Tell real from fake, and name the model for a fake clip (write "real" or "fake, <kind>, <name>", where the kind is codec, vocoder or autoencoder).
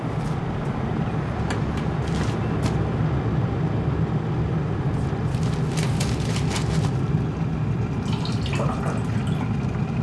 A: real